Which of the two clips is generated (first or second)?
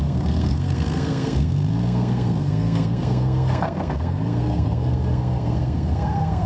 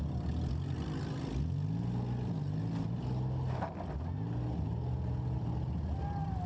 first